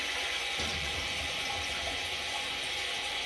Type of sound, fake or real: fake